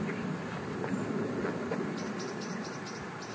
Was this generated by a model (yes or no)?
no